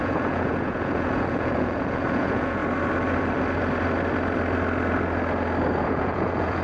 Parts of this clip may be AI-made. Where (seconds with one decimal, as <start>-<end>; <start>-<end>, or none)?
0.0-2.6; 5.8-6.6